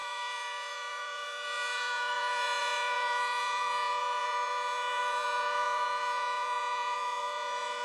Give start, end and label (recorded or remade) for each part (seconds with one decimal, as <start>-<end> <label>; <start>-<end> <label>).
0.0-7.8 remade